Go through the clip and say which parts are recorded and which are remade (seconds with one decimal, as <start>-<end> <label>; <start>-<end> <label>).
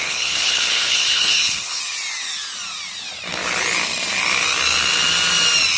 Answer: 0.0-1.8 remade; 1.8-5.8 recorded